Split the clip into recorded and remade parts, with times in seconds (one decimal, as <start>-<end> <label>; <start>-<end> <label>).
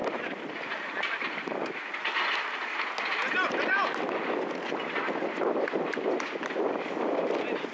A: 0.0-2.0 remade; 2.0-3.1 recorded; 3.1-4.0 remade; 4.0-7.7 recorded